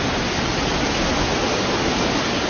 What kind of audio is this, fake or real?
real